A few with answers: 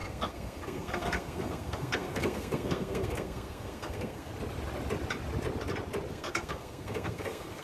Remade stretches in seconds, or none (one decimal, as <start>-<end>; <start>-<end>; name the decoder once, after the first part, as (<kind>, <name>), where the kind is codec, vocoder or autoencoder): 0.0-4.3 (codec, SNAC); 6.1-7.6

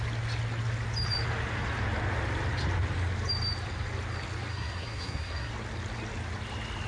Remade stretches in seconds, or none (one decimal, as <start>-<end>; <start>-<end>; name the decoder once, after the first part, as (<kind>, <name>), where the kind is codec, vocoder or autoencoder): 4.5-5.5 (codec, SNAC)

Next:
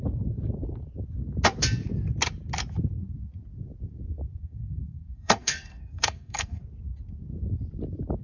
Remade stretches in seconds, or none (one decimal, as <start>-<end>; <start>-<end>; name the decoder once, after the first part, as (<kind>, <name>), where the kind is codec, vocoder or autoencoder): 4.4-6.6 (codec, SNAC)